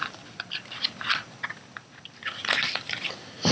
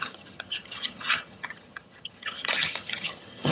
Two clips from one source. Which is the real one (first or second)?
first